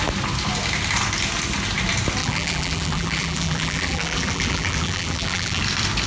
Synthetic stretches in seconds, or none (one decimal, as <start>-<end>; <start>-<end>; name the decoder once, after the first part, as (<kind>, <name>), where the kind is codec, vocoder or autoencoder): 2.2-5.6 (vocoder, BigVGAN v2)